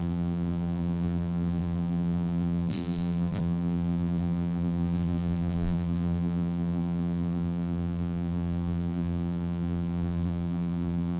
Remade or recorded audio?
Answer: remade